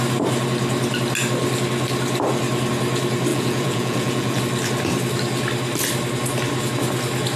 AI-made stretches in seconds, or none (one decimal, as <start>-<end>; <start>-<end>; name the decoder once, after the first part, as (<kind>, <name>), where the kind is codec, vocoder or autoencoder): 3.3-4.4 (vocoder, Vocos)